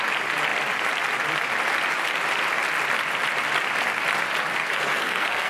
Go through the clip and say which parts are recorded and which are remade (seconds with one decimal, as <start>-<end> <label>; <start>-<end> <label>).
0.0-4.6 recorded; 4.6-5.5 remade